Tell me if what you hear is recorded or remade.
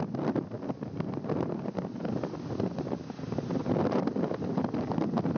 recorded